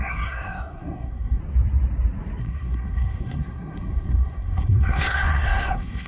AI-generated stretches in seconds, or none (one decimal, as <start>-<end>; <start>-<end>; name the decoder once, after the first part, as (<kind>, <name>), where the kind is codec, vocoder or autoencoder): 0.0-1.4 (codec, SNAC); 2.4-6.1